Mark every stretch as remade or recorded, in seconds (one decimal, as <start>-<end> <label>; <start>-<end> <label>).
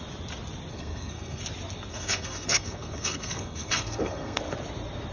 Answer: 0.0-0.7 recorded; 0.7-1.4 remade; 1.4-1.9 recorded; 1.9-4.4 remade; 4.4-5.1 recorded